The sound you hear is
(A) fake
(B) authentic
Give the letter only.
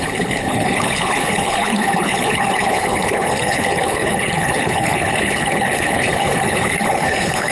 A